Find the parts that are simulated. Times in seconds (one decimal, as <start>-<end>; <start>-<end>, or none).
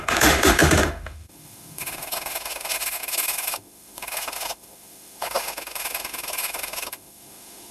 0.0-7.7